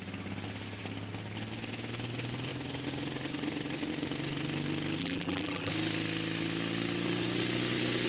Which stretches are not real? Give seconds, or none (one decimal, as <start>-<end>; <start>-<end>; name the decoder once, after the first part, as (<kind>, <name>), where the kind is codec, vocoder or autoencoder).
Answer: 5.0-5.7 (vocoder, BigVGAN v2)